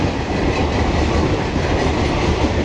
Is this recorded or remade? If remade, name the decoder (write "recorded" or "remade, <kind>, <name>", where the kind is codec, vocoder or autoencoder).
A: recorded